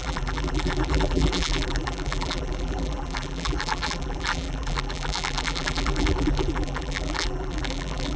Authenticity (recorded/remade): remade